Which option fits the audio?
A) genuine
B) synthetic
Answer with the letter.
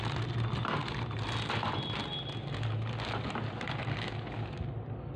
A